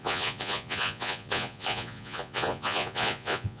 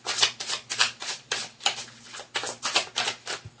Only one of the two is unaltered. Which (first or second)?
second